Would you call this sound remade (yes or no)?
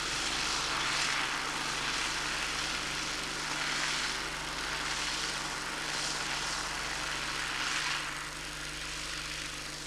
no